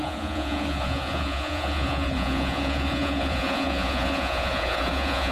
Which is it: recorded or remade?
remade